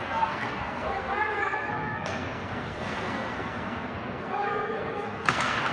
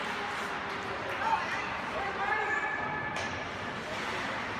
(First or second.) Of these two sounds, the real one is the second